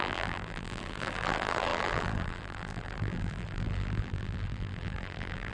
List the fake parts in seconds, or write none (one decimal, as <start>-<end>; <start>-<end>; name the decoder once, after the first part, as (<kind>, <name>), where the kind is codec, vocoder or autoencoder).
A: 0.0-5.5 (vocoder, BigVGAN v2)